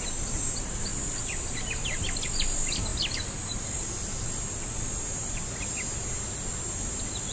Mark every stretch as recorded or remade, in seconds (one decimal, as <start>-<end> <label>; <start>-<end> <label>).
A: 0.0-7.3 recorded